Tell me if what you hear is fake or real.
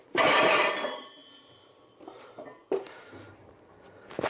fake